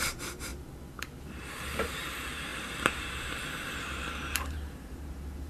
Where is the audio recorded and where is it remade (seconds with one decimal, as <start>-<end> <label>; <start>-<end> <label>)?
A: 0.0-0.5 remade; 0.5-1.2 recorded; 1.2-5.5 remade